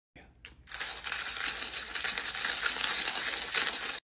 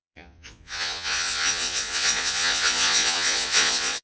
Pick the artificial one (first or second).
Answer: second